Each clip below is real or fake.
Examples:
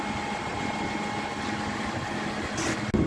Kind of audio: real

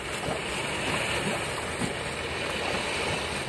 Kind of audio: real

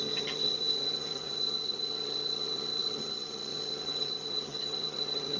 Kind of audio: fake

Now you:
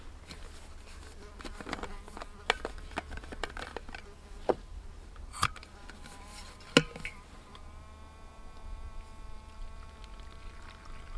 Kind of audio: real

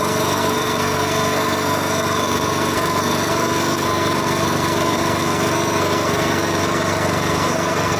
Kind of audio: fake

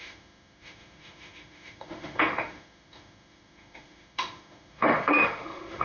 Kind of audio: fake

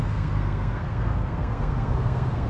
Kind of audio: fake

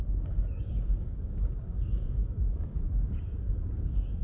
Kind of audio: fake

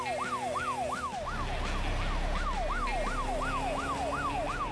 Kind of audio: real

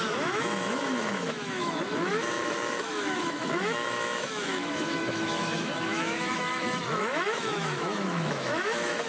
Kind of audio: fake